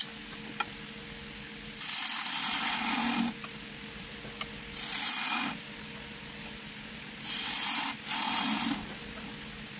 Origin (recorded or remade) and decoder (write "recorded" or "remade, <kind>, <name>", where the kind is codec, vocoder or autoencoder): recorded